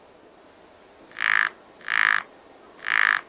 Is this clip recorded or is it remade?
recorded